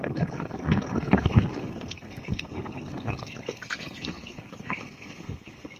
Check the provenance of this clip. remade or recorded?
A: remade